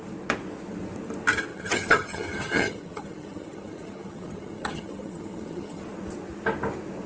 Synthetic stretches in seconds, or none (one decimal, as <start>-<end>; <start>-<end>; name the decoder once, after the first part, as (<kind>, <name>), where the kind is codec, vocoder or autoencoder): 1.5-5.8 (vocoder, HiFi-GAN)